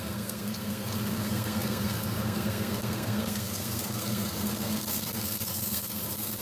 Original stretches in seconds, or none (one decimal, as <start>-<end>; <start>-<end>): none